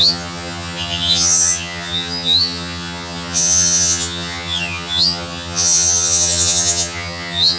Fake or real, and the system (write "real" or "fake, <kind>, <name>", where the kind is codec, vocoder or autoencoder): fake, vocoder, HiFi-GAN